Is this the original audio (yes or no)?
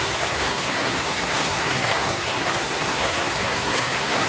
no